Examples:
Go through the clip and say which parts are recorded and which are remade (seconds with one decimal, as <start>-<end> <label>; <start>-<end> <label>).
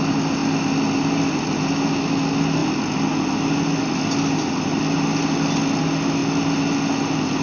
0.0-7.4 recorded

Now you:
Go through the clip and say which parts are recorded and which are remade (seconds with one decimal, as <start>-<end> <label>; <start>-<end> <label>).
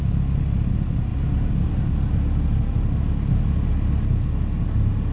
0.0-5.1 recorded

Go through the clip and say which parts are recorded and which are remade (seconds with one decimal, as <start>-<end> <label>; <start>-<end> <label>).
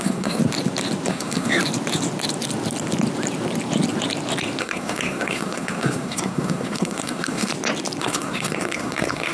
0.0-0.4 remade; 0.4-1.1 recorded; 1.1-1.6 remade; 1.6-4.6 recorded; 4.6-7.5 remade; 7.5-8.0 recorded; 8.0-9.3 remade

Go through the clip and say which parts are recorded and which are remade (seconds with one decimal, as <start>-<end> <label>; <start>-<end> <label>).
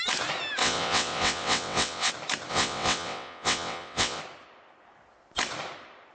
0.0-0.6 recorded; 0.6-2.1 remade; 2.1-2.5 recorded; 2.5-4.2 remade; 4.2-6.1 recorded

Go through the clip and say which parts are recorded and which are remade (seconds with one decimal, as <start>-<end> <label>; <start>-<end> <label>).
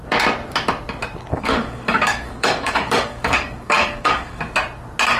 0.0-1.3 recorded; 1.3-4.4 remade; 4.4-5.2 recorded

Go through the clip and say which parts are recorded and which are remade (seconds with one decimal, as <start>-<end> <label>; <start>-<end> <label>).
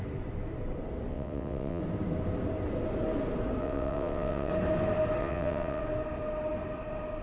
0.0-1.1 recorded; 1.1-1.8 remade; 1.8-3.6 recorded; 3.6-4.5 remade; 4.5-5.2 recorded; 5.2-5.8 remade; 5.8-7.2 recorded